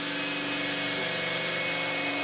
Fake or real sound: real